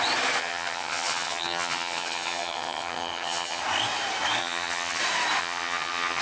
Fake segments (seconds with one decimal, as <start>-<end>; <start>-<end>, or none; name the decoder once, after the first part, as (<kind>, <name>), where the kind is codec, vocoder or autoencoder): 0.4-3.6 (vocoder, HiFi-GAN); 4.4-5.0; 5.4-6.2